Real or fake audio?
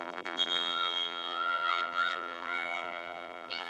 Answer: fake